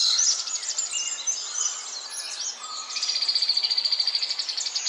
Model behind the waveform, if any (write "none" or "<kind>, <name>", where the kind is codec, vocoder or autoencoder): none